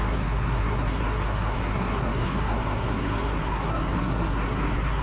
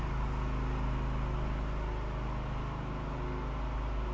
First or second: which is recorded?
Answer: second